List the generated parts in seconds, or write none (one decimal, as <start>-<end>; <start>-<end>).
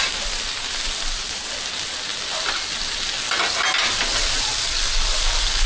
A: none